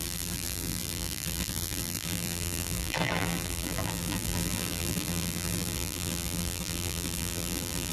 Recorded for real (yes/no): no